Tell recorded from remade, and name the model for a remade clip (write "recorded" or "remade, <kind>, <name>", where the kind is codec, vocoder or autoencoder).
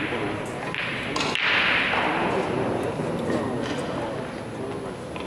recorded